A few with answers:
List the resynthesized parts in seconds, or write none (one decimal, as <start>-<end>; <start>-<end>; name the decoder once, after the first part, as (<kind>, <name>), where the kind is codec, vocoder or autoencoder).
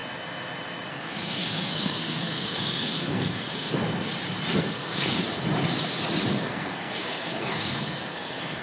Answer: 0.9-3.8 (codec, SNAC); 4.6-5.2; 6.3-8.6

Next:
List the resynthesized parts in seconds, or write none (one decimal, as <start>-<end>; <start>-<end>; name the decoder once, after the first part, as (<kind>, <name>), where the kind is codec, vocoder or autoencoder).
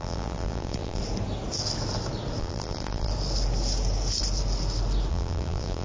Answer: 0.0-1.0 (vocoder, BigVGAN v2); 2.4-3.1; 5.1-5.8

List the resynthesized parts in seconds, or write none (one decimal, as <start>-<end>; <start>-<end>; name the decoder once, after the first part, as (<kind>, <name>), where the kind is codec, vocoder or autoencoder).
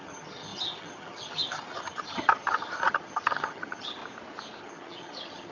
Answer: 0.0-4.0 (vocoder, HiFi-GAN); 4.6-5.5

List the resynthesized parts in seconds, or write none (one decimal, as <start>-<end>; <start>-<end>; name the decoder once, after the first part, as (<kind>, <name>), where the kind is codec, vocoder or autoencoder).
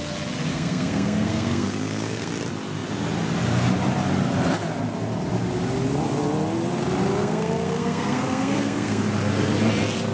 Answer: 0.5-2.3 (codec, SNAC); 7.2-9.0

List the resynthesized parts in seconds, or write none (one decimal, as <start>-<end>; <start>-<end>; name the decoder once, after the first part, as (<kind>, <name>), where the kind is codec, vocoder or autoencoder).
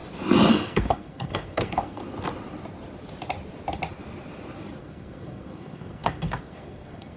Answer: 0.5-2.0 (codec, SNAC); 4.8-7.2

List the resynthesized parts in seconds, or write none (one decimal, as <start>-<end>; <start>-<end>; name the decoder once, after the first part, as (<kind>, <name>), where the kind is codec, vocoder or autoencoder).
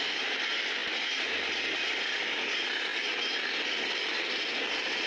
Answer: none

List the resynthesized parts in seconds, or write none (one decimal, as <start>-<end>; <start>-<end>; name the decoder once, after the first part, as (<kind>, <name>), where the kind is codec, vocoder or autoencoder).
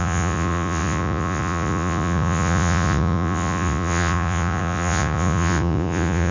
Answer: 0.0-6.3 (vocoder, Vocos)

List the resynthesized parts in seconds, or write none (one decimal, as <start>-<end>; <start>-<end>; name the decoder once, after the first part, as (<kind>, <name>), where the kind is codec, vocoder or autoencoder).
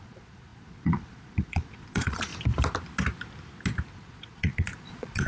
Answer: 0.0-2.3 (vocoder, Vocos); 3.9-5.3